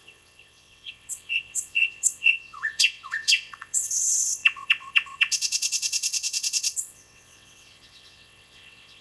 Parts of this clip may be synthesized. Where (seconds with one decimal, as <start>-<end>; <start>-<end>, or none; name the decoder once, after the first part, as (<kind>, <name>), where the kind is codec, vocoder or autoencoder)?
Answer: 0.0-9.0 (vocoder, WaveNeXt)